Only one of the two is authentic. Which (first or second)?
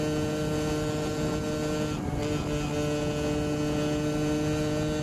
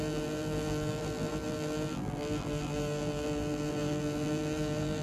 first